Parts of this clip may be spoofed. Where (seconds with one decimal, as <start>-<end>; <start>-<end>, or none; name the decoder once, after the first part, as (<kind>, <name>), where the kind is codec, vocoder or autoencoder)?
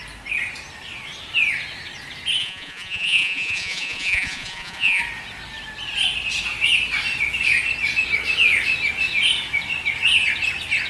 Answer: 2.4-5.0 (vocoder, Vocos)